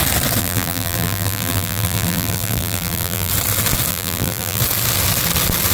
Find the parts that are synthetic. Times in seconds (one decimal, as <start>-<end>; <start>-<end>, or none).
0.4-3.3; 3.9-4.6